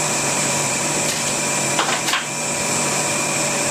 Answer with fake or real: fake